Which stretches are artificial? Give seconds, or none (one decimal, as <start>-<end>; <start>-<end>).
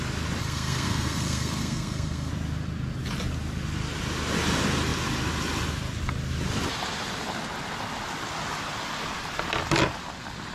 0.4-2.3